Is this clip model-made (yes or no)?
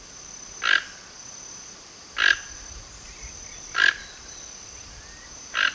no